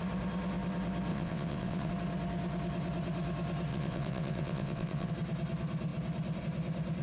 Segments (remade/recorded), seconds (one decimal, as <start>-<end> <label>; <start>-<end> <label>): 0.0-1.1 recorded; 1.1-1.9 remade; 1.9-3.7 recorded; 3.7-5.1 remade; 5.1-7.0 recorded